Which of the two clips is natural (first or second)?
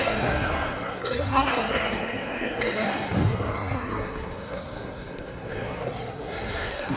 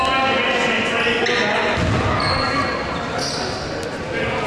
second